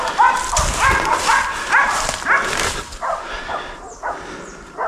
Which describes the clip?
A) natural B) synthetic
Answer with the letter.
A